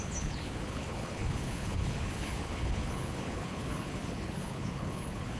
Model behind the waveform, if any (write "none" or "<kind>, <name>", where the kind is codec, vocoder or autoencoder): codec, HILCodec